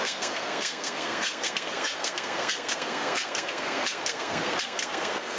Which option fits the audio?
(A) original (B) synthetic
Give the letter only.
B